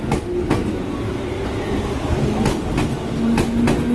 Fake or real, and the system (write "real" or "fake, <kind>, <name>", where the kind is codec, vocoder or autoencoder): real